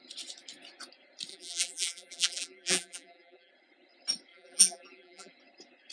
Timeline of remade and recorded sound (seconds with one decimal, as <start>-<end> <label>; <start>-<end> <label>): 0.0-1.3 recorded; 1.3-3.5 remade; 3.5-4.3 recorded; 4.3-5.3 remade; 5.3-5.9 recorded